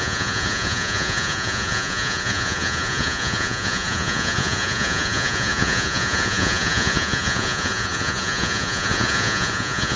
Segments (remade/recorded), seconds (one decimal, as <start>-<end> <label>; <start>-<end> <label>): 0.0-10.0 remade